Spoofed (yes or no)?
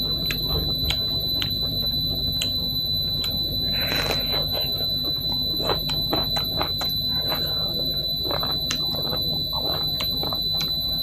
yes